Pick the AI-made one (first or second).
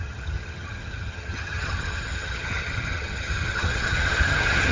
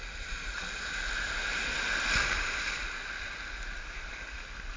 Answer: first